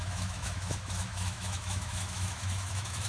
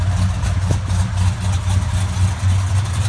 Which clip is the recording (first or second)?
second